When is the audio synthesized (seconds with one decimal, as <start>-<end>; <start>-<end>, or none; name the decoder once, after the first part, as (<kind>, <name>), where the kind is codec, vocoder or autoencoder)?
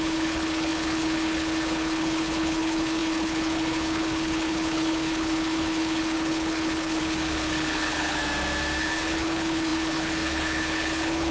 0.0-8.2 (codec, HILCodec); 8.8-11.3